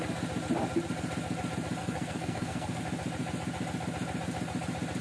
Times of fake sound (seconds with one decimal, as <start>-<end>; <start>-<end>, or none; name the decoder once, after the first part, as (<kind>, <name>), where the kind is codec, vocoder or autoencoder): 1.8-2.8 (codec, SNAC)